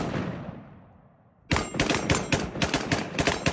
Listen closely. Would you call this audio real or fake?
real